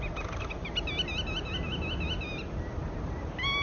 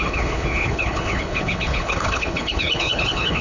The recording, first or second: first